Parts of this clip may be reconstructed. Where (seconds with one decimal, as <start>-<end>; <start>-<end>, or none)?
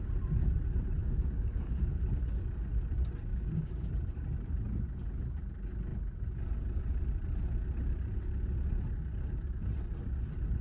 1.0-1.9; 3.3-3.9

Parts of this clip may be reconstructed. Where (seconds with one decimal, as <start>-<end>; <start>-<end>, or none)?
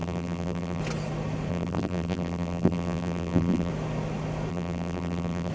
0.0-0.8; 1.5-3.7; 4.5-5.5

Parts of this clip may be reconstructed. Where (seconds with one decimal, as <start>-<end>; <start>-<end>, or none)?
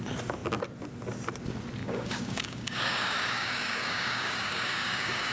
1.8-5.3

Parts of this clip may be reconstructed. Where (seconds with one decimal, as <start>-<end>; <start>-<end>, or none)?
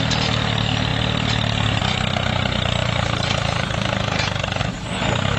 2.8-4.6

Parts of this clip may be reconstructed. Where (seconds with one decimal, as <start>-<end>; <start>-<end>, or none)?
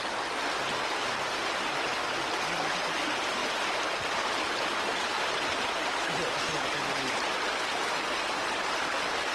none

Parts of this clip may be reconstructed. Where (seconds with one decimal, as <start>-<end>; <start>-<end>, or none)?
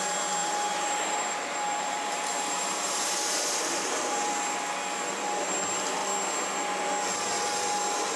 0.4-4.3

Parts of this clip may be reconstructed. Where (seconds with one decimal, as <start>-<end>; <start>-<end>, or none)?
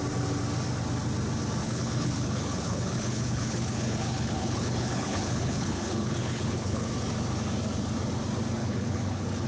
1.6-6.9; 8.6-9.5